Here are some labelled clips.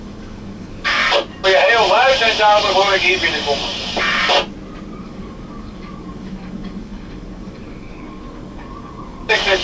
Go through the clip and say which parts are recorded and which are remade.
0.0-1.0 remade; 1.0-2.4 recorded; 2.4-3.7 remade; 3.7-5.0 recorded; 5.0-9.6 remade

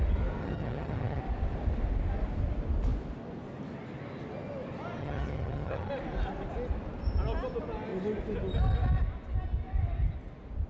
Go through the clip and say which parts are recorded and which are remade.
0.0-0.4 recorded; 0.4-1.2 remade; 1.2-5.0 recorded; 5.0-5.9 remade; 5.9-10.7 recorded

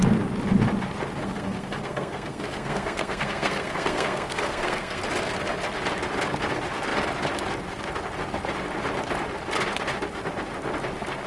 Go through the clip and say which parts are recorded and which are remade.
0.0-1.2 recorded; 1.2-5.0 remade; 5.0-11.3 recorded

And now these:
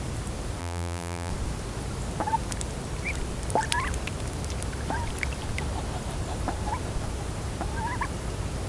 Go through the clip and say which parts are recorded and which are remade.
0.0-0.6 recorded; 0.6-1.3 remade; 1.3-8.7 recorded

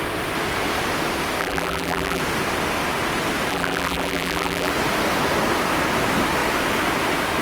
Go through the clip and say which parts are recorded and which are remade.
0.0-1.4 recorded; 1.4-2.2 remade; 2.2-3.5 recorded; 3.5-4.7 remade; 4.7-7.4 recorded

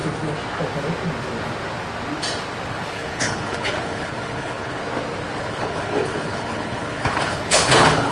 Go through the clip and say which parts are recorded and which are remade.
0.0-2.8 recorded; 2.8-4.8 remade; 4.8-5.4 recorded; 5.4-8.1 remade